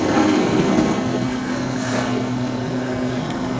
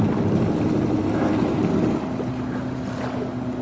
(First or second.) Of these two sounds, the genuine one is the second